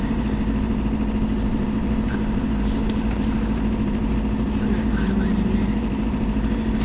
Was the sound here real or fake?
fake